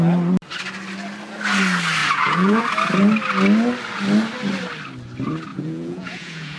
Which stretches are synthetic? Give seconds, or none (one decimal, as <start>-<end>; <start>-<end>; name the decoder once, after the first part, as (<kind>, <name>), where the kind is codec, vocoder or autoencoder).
2.0-2.6 (vocoder, Vocos); 5.5-6.6